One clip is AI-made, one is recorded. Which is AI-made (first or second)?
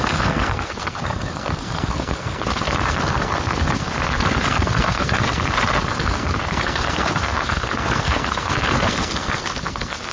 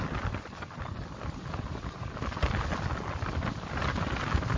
first